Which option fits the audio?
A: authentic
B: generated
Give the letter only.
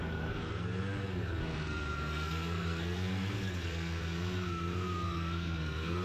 B